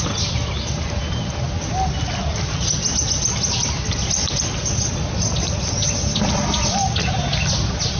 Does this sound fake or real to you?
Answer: real